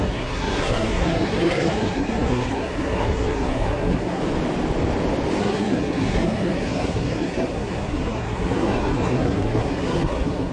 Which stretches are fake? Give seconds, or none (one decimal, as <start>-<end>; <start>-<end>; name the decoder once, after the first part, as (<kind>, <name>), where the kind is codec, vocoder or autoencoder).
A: 0.0-4.2 (codec, SNAC); 5.4-10.5